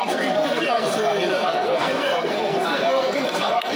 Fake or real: fake